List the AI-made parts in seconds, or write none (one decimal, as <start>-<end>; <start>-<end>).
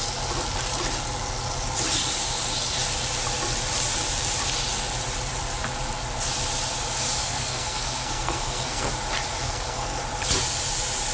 7.2-8.9; 9.4-10.0